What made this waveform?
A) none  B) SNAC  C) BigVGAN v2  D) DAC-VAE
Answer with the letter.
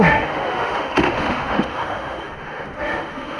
D